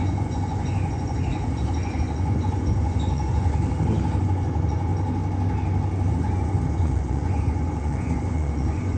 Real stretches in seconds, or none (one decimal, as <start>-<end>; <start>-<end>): 3.6-4.2; 4.9-6.1